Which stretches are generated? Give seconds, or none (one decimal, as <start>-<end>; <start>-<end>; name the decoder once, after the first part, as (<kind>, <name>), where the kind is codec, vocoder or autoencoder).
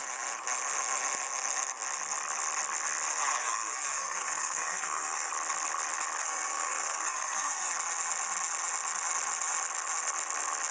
3.4-5.3 (codec, SNAC); 6.2-7.7